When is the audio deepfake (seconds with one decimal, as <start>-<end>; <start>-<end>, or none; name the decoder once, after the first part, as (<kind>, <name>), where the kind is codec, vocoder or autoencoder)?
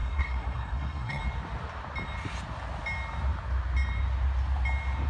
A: 0.0-1.2 (codec, SNAC)